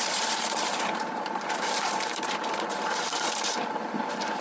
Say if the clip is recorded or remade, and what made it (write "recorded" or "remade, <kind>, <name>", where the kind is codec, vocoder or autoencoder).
remade, vocoder, BigVGAN v2